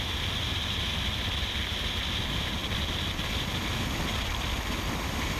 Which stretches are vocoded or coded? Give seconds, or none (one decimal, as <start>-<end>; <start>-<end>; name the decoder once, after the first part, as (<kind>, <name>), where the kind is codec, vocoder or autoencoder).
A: none